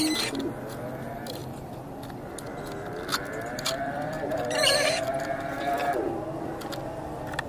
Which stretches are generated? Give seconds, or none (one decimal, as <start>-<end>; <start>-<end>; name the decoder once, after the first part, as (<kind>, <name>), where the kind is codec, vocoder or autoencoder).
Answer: 1.4-1.9 (vocoder, BigVGAN v2); 3.1-6.5